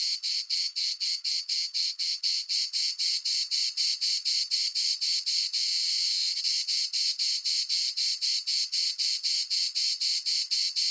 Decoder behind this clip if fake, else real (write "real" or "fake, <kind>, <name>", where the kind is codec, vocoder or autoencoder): fake, vocoder, WaveNeXt